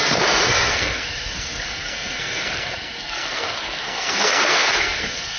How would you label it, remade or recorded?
remade